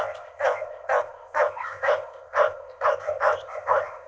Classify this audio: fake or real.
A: fake